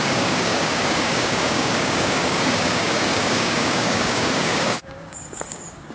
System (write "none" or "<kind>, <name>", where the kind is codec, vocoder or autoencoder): codec, DAC